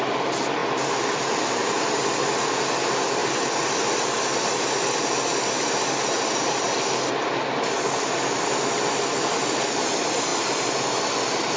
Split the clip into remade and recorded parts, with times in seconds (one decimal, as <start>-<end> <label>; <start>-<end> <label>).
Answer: 0.0-11.6 recorded